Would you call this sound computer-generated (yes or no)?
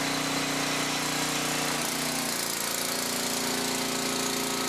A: no